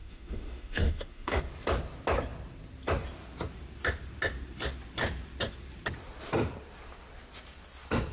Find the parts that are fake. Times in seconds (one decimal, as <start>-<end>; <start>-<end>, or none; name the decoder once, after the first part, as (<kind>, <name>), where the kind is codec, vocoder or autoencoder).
0.0-1.4 (autoencoder, DAC-VAE)